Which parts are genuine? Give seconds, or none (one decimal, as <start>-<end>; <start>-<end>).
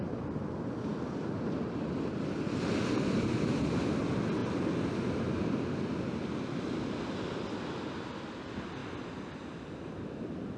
0.0-0.9; 4.0-8.8; 10.2-10.6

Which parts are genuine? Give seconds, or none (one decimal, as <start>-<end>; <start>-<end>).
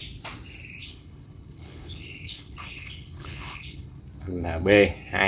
0.0-0.8; 4.0-5.3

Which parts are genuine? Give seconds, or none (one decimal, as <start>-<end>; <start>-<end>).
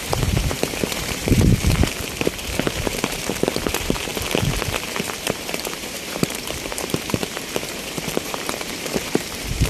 4.1-4.7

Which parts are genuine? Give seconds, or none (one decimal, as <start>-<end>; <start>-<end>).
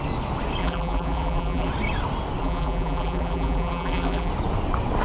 0.0-0.6; 1.7-2.4; 4.3-5.0